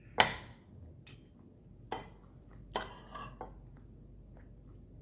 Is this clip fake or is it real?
real